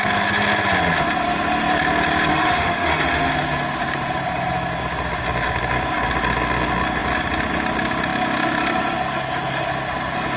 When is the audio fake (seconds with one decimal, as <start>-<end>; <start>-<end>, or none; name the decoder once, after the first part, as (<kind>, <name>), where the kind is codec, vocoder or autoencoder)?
2.3-3.3 (autoencoder, DAC-VAE)